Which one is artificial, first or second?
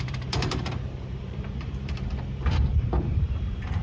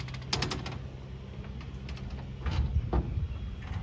first